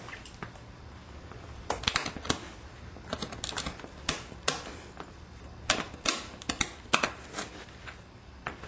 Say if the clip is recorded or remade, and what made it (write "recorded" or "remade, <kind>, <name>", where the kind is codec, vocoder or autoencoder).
recorded